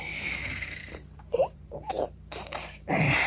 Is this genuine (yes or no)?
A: no